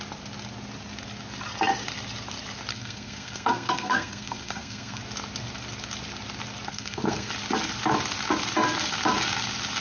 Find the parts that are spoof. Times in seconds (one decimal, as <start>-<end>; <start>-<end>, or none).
2.7-5.0; 6.7-7.3